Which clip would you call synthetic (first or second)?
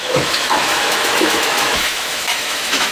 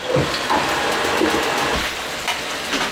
first